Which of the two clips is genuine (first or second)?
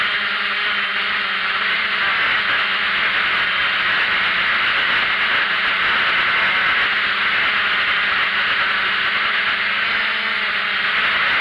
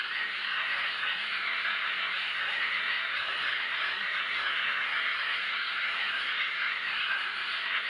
first